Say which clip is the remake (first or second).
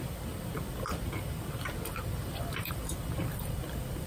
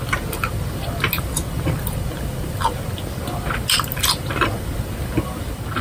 first